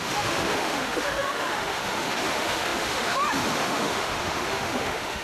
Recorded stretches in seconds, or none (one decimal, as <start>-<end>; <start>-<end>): none